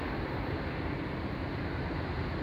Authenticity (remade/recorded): recorded